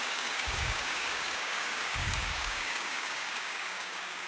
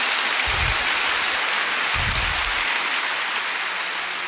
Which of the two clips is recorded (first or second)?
second